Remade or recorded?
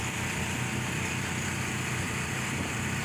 remade